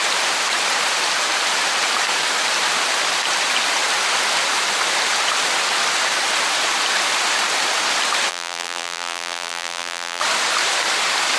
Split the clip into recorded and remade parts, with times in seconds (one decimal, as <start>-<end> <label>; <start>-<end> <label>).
0.0-8.3 recorded; 8.3-10.2 remade; 10.2-11.4 recorded